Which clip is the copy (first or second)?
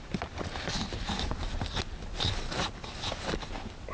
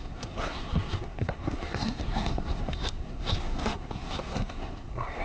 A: second